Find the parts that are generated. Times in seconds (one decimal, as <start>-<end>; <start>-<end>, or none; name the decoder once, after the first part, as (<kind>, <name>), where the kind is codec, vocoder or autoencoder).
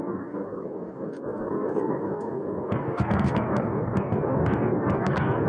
0.0-5.5 (codec, DAC)